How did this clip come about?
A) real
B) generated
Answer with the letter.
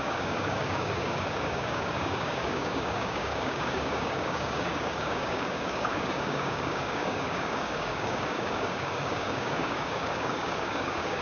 B